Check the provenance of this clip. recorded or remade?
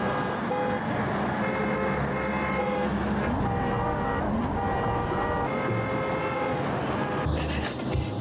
recorded